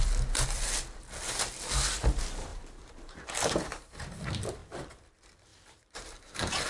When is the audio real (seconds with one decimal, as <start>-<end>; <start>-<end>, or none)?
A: 0.0-2.5; 4.1-5.5